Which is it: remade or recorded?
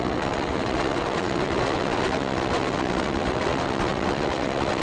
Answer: remade